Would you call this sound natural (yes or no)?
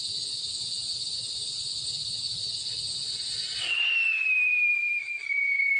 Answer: yes